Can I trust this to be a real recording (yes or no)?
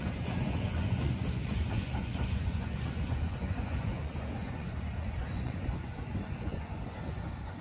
no